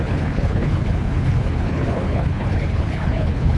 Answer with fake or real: fake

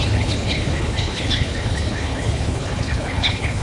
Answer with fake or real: fake